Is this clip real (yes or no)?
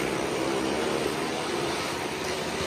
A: yes